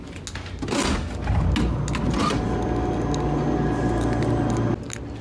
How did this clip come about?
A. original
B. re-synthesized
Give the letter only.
A